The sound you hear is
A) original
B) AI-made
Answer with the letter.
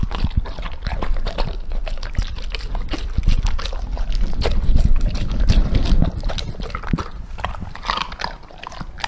A